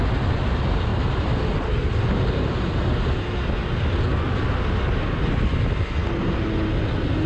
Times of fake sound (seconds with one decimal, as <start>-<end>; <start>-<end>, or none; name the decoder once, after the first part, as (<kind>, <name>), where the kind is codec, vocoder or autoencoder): none